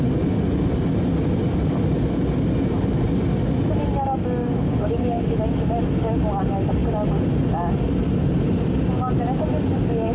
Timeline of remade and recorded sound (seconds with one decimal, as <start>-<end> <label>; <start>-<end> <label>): 0.0-4.4 recorded; 4.4-5.4 remade; 5.4-10.1 recorded